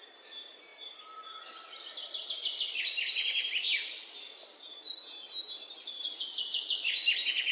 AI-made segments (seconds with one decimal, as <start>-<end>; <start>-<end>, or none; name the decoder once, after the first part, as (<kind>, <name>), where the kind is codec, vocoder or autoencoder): none